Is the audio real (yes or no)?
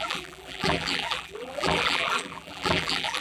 no